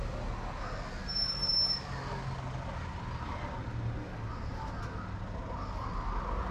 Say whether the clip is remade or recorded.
recorded